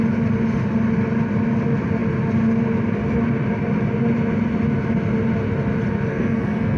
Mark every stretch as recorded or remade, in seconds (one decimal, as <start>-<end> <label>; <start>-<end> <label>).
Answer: 0.0-6.1 recorded; 6.1-6.8 remade